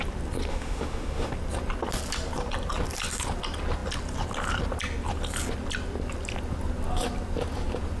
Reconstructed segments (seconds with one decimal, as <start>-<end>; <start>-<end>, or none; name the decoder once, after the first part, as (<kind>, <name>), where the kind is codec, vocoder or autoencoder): 0.5-1.3 (autoencoder, DAC-VAE)